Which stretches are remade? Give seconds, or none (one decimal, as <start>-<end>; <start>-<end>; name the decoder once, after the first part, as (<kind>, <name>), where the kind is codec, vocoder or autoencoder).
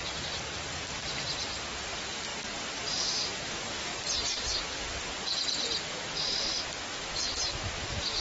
none